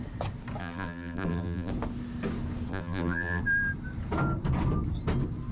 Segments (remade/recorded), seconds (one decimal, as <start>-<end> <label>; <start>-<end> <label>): 0.0-0.6 recorded; 0.6-1.7 remade; 1.7-2.7 recorded; 2.7-3.4 remade; 3.4-5.5 recorded